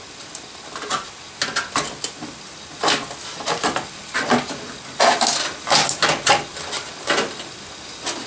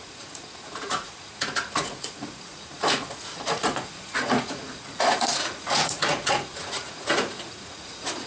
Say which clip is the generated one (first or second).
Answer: second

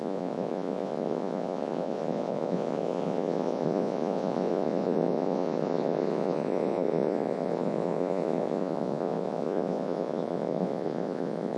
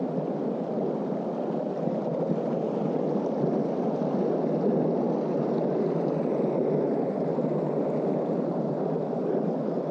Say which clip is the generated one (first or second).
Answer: first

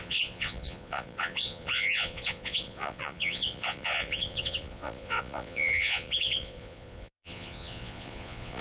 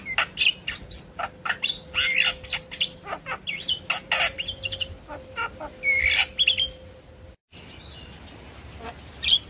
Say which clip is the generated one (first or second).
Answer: first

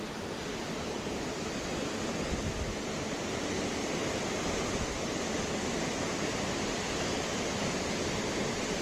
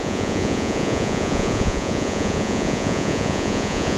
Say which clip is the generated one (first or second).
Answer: second